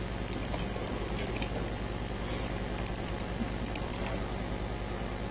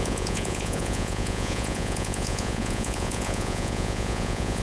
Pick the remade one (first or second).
second